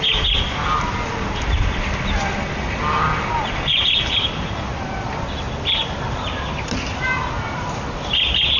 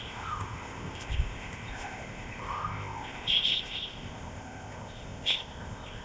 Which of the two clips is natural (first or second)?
first